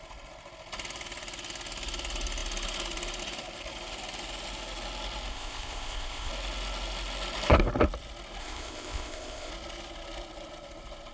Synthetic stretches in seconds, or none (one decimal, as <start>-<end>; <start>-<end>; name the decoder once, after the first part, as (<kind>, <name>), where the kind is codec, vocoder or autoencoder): 5.3-6.3 (codec, ZipCodec); 8.4-9.5